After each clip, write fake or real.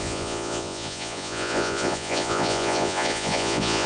fake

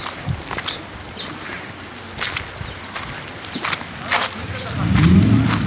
real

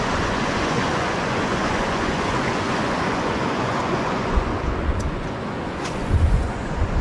fake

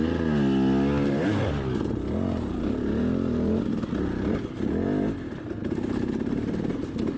real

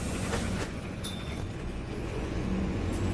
fake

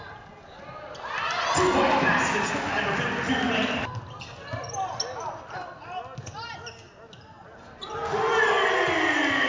real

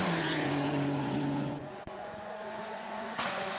fake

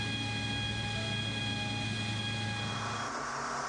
real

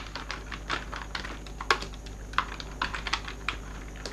real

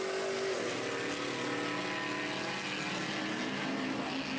real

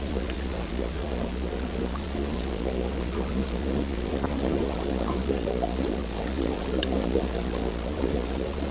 fake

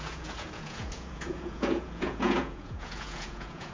fake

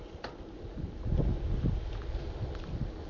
real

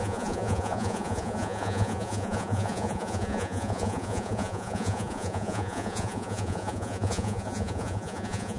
fake